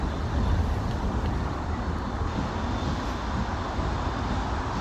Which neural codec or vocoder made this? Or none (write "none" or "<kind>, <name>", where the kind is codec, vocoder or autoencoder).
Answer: none